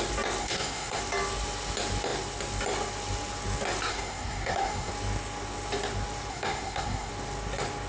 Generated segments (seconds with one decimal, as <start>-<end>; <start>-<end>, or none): 0.4-1.0; 3.9-4.9; 6.3-7.1